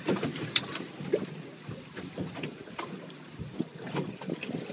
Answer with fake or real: fake